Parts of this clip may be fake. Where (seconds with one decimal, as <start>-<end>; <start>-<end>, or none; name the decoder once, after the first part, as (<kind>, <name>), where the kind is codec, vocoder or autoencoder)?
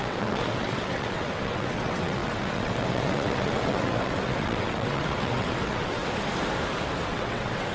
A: 0.0-6.0 (vocoder, WaveNeXt); 7.1-7.7